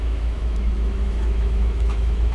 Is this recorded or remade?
remade